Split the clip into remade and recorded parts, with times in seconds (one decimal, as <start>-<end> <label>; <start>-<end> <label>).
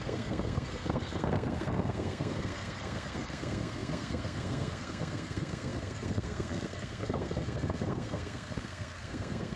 0.0-9.6 remade